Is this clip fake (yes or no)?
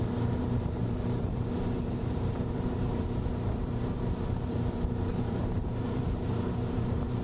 yes